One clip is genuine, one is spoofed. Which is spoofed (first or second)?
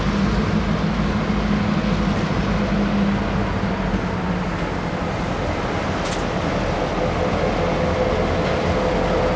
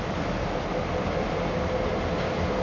second